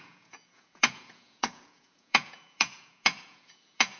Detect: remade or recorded remade